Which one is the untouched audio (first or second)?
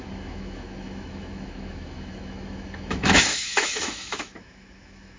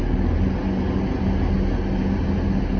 second